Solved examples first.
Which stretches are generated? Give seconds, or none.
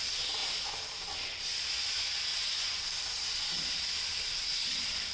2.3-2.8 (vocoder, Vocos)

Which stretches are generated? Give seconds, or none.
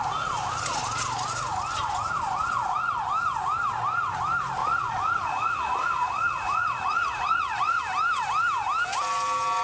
2.4-2.9 (vocoder, Vocos); 4.6-7.8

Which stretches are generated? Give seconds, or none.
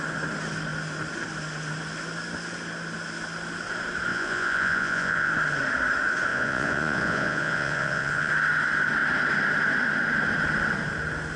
4.1-5.3 (vocoder, Vocos); 6.3-8.3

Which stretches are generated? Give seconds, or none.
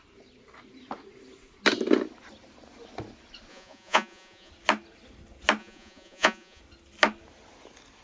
3.5-4.5 (vocoder, Vocos); 5.6-6.6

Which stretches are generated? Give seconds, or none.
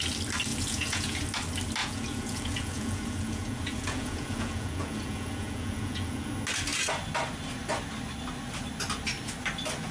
0.5-1.2 (vocoder, Vocos); 1.8-6.3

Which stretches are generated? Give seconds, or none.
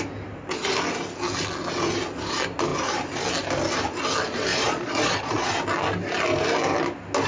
4.5-5.5 (vocoder, Vocos)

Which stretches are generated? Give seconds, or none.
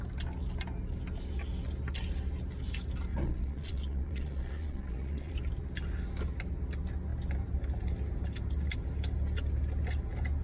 3.1-5.3 (vocoder, Vocos)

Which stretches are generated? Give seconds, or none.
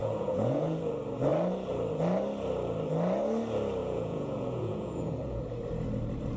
0.0-0.8 (vocoder, Vocos); 3.8-5.4